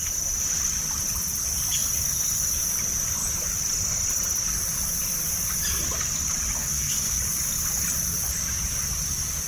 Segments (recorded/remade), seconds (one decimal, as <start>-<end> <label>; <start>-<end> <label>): 0.0-6.6 recorded; 6.6-7.2 remade; 7.2-9.5 recorded